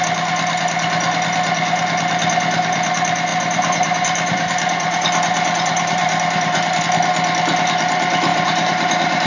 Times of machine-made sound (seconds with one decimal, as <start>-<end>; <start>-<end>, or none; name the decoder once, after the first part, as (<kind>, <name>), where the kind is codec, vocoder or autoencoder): 3.3-6.8 (vocoder, BigVGAN v2); 8.3-9.3